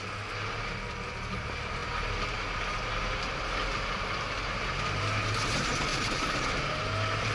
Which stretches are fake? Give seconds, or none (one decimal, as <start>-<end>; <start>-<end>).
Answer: 5.9-6.5